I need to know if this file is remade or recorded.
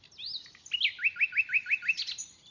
recorded